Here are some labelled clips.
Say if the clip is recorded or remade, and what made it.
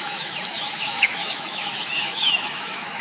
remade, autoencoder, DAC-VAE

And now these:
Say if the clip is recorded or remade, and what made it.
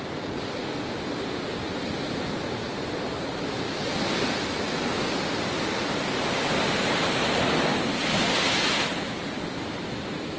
recorded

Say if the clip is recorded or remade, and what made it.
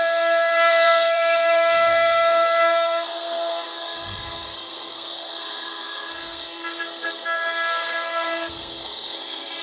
remade, codec, SNAC